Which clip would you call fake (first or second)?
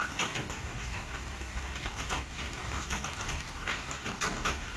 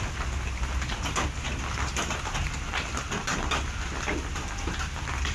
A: first